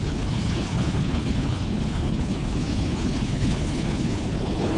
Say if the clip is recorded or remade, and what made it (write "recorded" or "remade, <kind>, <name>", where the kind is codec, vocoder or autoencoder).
remade, codec, HILCodec